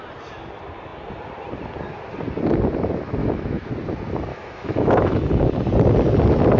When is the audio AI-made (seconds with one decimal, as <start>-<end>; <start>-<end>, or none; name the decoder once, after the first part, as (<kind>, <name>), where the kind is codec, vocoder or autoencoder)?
3.2-3.7 (autoencoder, DAC-VAE); 4.3-5.2